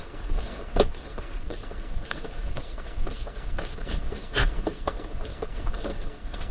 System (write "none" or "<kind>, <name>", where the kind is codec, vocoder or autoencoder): codec, SNAC